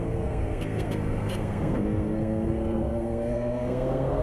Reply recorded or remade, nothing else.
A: remade